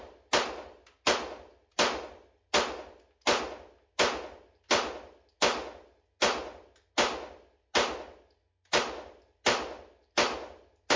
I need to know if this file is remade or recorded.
recorded